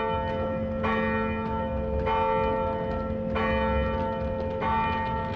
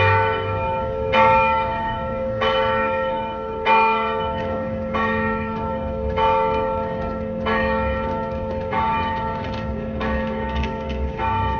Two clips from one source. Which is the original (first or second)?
first